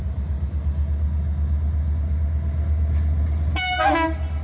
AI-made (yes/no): no